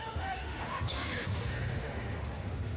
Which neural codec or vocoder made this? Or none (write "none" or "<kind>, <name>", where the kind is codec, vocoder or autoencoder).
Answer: autoencoder, DAC-VAE